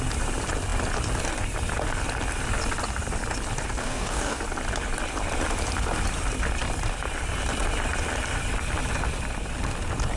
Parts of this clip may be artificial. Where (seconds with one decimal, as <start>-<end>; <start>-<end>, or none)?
3.8-4.4